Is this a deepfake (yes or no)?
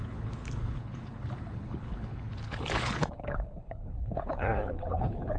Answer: yes